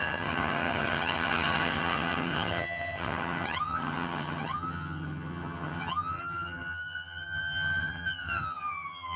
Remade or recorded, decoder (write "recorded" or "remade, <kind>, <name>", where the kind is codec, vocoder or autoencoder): remade, vocoder, HiFi-GAN